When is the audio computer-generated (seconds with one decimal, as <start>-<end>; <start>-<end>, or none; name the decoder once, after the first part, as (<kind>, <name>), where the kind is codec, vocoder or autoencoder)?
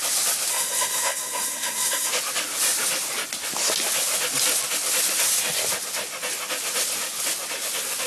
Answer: 0.5-2.1 (codec, SNAC)